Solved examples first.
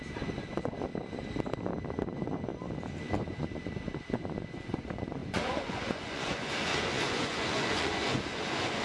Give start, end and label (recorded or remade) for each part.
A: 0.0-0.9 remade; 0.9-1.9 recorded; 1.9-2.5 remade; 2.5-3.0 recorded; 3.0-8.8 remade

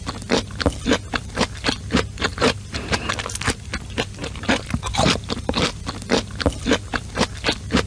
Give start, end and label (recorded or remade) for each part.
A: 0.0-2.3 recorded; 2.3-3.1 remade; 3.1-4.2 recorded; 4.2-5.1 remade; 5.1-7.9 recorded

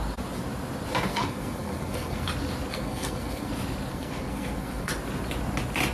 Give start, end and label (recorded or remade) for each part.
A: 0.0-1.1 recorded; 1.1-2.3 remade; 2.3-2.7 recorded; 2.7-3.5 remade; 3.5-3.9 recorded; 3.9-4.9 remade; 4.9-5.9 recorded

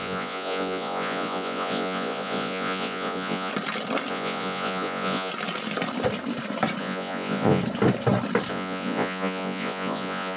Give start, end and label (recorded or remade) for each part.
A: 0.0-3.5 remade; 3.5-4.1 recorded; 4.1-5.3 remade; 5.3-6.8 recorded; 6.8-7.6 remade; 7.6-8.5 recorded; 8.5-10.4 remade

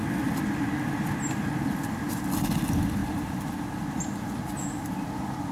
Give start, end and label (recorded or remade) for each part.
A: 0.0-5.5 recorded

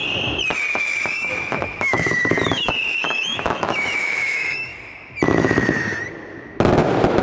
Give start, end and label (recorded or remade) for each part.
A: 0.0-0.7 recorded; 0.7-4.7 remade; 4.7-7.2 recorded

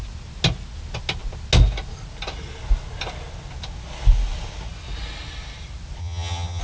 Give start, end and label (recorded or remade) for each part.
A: 0.0-6.0 recorded; 6.0-6.6 remade